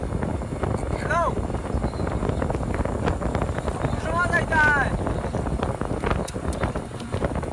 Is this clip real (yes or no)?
yes